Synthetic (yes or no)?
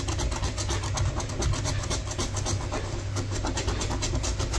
no